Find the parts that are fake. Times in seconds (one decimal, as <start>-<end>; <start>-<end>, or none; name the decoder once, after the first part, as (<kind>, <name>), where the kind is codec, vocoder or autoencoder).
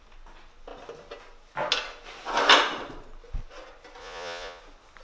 4.0-4.6 (vocoder, Vocos)